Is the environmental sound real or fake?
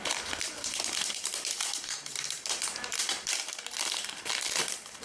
fake